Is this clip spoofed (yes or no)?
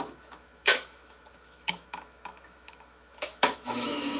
yes